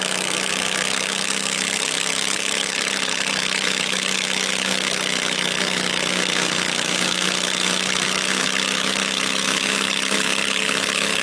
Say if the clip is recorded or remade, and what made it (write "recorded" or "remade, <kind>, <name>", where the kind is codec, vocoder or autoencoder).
remade, autoencoder, DAC-VAE